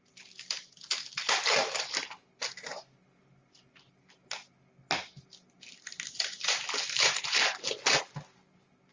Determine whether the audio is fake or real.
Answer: real